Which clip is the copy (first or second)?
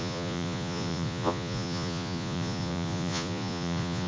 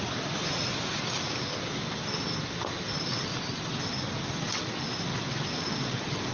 first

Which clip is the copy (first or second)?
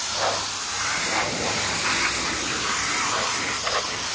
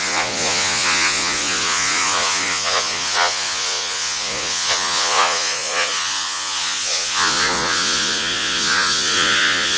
second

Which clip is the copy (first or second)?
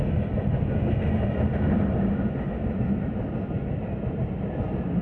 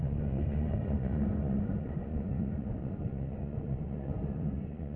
second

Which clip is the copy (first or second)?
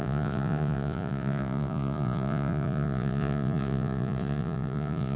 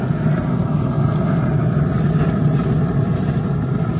first